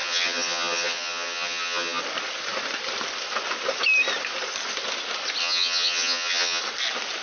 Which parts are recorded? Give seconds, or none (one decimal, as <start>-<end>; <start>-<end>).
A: 2.0-5.4; 6.6-7.2